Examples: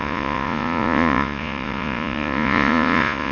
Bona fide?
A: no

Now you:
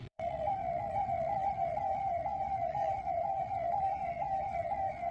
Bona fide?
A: no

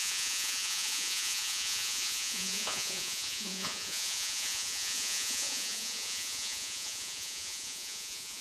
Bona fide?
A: no